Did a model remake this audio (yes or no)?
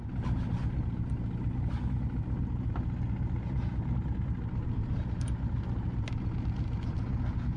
no